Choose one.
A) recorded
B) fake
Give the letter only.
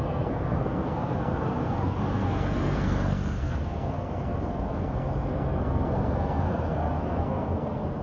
B